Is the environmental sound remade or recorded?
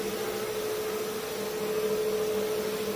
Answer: recorded